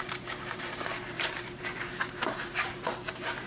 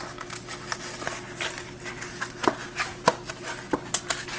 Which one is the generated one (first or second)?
first